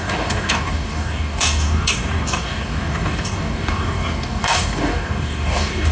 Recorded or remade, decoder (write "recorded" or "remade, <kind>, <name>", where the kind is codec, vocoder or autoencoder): remade, codec, DAC